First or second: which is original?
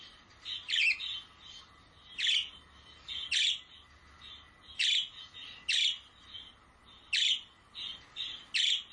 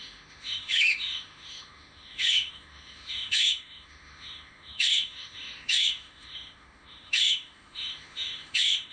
first